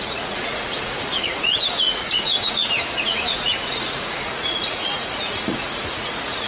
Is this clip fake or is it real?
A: fake